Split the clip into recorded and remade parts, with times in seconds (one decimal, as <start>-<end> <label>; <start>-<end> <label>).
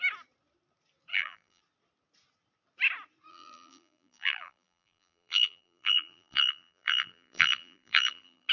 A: 0.0-1.1 recorded; 1.1-1.6 remade; 1.6-3.3 recorded; 3.3-8.5 remade